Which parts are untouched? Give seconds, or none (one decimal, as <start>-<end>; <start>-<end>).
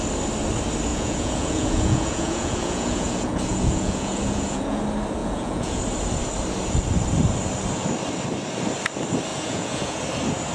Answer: 0.0-0.9; 4.8-5.2; 5.8-9.3; 10.0-10.5